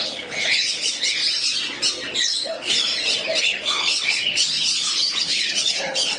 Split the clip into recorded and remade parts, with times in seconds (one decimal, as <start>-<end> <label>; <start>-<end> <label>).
0.0-1.2 remade; 1.2-2.2 recorded; 2.2-2.9 remade; 2.9-3.4 recorded; 3.4-6.2 remade